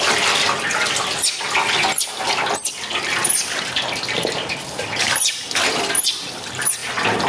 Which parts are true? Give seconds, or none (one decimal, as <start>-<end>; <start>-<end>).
0.0-7.3